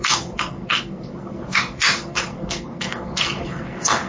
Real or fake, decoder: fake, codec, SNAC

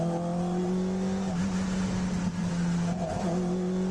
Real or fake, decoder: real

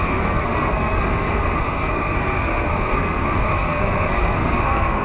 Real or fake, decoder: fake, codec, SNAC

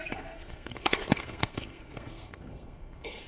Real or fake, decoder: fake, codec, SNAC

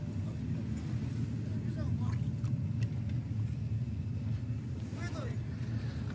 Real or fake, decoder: real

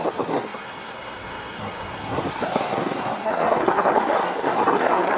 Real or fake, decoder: fake, codec, SNAC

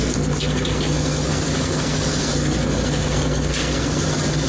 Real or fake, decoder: fake, codec, SNAC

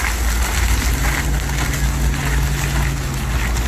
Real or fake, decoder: real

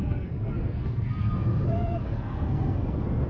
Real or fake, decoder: fake, codec, SNAC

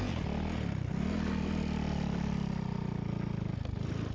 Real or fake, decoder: real